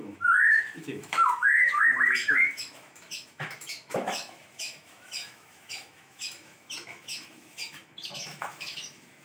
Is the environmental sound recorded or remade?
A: remade